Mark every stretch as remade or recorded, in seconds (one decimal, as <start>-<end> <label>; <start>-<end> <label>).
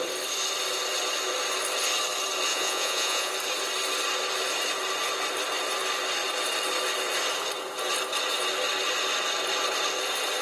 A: 0.0-2.5 recorded; 2.5-3.3 remade; 3.3-10.4 recorded